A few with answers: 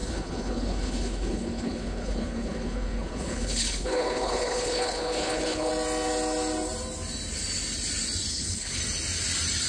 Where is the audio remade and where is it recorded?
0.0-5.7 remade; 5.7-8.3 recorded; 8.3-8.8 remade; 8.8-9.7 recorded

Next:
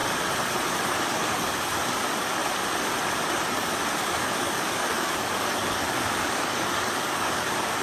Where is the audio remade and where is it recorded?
0.0-0.9 recorded; 0.9-2.4 remade; 2.4-4.0 recorded; 4.0-7.8 remade

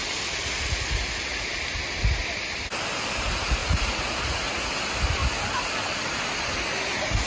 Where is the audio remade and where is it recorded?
0.0-3.6 recorded; 3.6-4.7 remade; 4.7-7.3 recorded

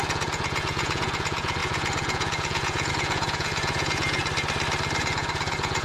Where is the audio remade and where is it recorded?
0.0-4.2 remade; 4.2-5.0 recorded; 5.0-5.8 remade

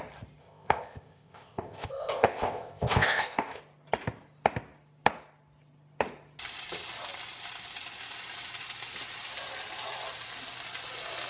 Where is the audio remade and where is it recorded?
0.0-0.4 recorded; 0.4-3.6 remade; 3.6-11.3 recorded

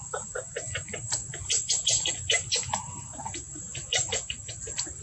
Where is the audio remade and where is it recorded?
0.0-1.2 recorded; 1.2-4.2 remade; 4.2-5.0 recorded